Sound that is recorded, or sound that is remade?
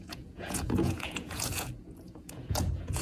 remade